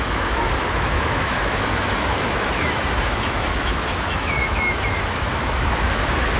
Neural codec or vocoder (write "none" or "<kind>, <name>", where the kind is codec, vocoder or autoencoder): autoencoder, DAC-VAE